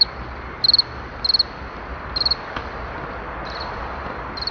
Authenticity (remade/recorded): recorded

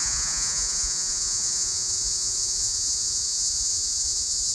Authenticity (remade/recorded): remade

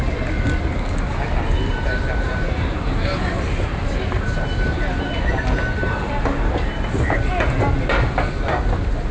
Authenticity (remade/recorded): recorded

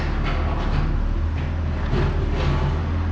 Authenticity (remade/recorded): recorded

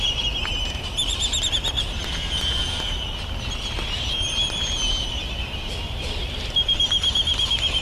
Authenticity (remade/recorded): recorded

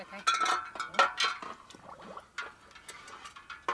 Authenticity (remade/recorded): recorded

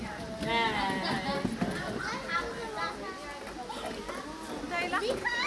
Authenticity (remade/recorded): recorded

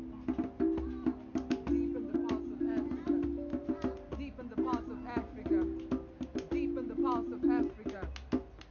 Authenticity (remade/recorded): recorded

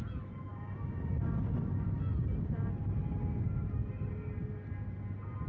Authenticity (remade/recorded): recorded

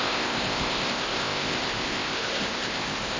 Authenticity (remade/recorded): remade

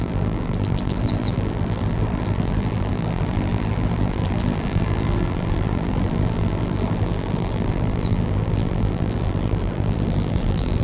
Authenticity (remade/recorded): remade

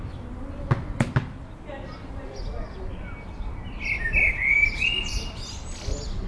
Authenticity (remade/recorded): recorded